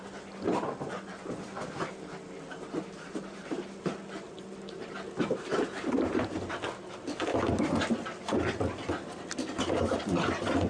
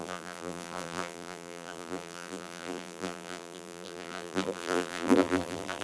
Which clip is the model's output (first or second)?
second